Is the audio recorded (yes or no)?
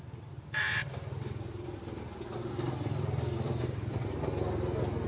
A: yes